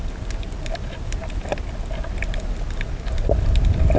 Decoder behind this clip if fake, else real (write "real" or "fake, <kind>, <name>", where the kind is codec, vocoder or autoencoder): real